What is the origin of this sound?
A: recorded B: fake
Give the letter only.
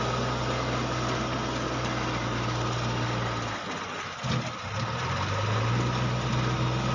A